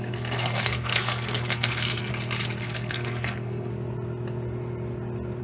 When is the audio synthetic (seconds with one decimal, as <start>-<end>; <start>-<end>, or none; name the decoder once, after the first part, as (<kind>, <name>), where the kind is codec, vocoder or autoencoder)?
0.0-2.1 (codec, SNAC); 2.6-3.7